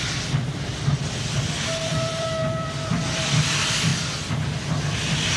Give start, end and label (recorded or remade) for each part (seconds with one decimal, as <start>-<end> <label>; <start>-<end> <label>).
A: 0.0-3.9 remade; 3.9-4.4 recorded; 4.4-5.4 remade